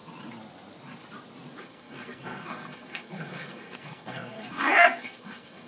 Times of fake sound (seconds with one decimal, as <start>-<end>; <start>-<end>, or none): 1.6-5.7